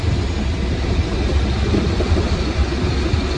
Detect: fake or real real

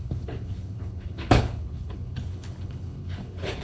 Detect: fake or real fake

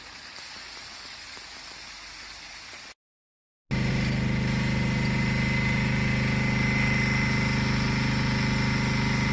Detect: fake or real real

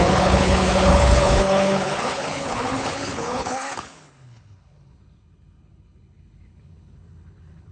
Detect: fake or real fake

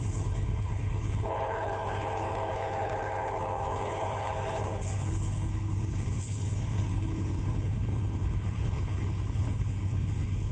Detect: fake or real fake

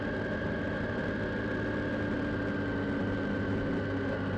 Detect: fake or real real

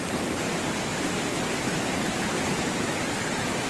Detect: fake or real real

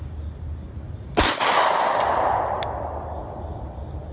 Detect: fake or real real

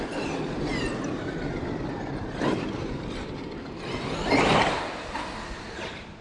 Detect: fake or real real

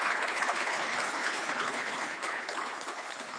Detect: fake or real fake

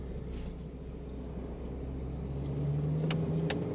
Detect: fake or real real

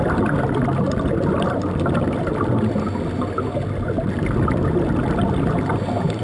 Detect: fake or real real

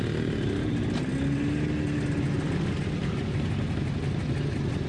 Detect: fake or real real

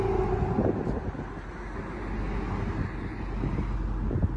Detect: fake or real real